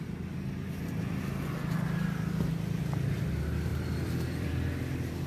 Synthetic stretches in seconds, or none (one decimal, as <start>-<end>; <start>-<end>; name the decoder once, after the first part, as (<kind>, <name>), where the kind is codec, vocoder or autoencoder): 3.7-4.5 (vocoder, BigVGAN v2)